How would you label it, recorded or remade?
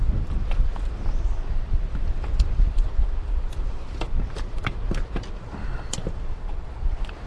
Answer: remade